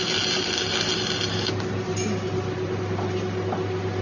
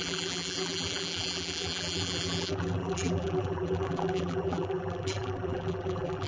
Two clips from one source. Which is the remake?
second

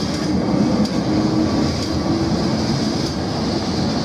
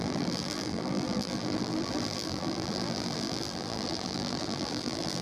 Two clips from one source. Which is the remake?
second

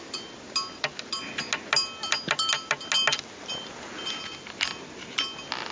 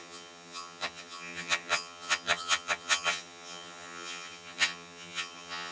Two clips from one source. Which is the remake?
second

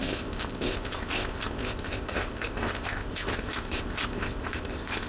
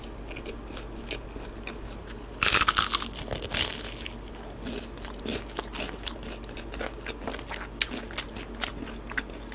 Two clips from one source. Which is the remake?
first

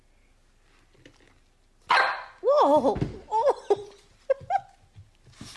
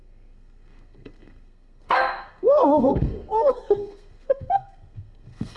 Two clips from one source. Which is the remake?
second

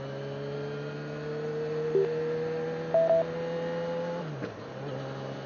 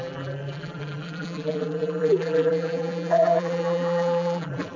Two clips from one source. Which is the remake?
second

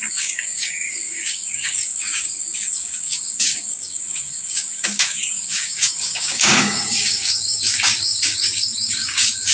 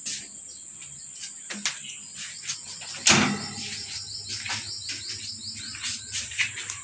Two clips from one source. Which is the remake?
first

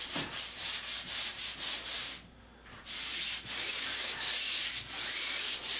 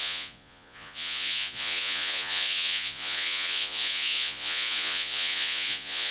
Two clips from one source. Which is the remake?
second